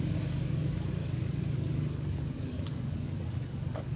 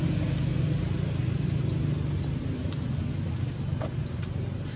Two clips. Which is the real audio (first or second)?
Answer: second